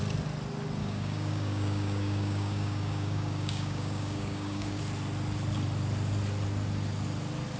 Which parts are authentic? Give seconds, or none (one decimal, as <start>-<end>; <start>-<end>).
0.0-0.8; 4.8-7.6